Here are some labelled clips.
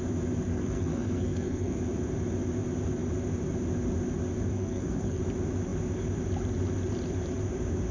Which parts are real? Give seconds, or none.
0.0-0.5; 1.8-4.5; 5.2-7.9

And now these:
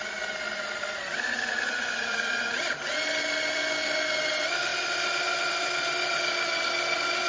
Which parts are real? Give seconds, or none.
0.0-7.3

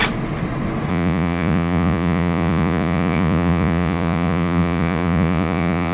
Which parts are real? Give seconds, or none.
0.0-0.9

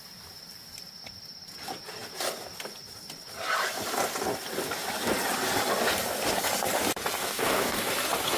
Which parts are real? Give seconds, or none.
0.0-7.2; 7.9-8.4

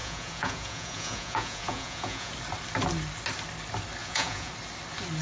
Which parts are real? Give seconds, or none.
2.3-4.0; 4.5-5.2

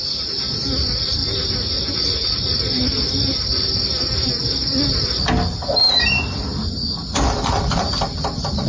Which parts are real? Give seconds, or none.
1.2-5.8